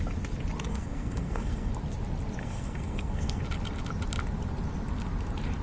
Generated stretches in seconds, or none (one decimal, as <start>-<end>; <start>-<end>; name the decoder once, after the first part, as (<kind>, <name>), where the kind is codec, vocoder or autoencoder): 0.7-1.7 (codec, SNAC); 2.4-3.4

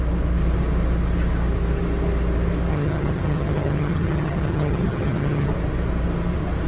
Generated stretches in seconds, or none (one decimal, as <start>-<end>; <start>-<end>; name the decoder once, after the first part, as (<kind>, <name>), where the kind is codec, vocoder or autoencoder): 2.7-5.5 (vocoder, HiFi-GAN)

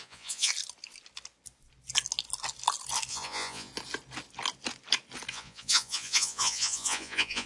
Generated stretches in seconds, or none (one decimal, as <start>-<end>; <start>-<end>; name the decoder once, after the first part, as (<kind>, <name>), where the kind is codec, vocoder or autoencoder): 0.0-0.5 (vocoder, Vocos); 3.1-3.7; 5.3-7.5

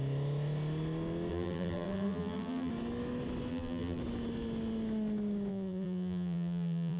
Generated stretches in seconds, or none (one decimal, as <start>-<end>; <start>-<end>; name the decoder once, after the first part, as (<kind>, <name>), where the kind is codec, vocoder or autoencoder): 1.3-2.7 (vocoder, BigVGAN v2); 3.5-4.0; 5.5-7.0

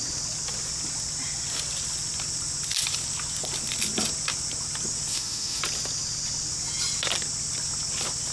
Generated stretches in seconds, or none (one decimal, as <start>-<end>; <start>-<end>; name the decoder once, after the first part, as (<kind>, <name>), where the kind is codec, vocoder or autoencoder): 5.1-5.6 (autoencoder, DAC-VAE)

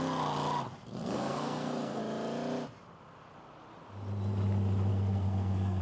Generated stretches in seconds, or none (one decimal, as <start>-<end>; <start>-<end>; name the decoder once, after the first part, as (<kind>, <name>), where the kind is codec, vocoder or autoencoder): 1.0-2.0 (codec, SNAC); 4.9-5.8

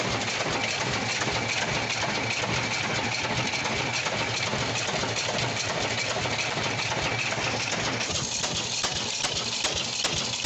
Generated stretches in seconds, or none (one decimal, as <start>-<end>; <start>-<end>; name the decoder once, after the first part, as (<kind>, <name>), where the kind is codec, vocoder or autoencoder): 4.5-6.9 (vocoder, BigVGAN v2)

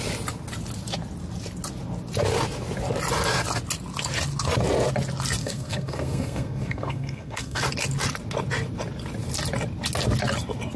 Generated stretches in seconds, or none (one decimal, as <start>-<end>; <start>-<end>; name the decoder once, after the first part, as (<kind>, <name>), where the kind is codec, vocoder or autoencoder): 5.4-7.6 (codec, SNAC)